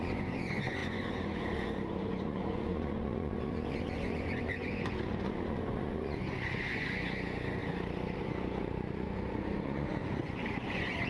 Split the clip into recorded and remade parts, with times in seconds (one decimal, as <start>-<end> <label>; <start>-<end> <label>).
0.0-7.6 remade; 7.6-8.2 recorded; 8.2-11.1 remade